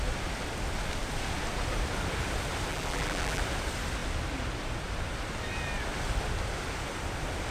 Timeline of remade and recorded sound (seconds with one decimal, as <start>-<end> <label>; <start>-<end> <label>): 0.0-2.7 recorded; 2.7-3.4 remade; 3.4-7.5 recorded